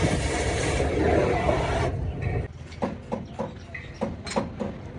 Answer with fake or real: real